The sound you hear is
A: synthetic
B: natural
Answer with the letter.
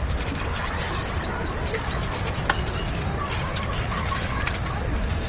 B